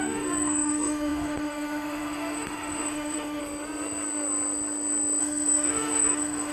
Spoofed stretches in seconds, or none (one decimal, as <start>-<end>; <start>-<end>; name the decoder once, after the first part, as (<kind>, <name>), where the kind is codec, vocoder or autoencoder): 0.0-3.4 (autoencoder, DAC-VAE); 5.2-6.5